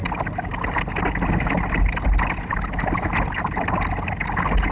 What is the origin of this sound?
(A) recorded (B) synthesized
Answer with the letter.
A